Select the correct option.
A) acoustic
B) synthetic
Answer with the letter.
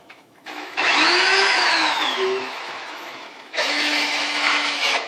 B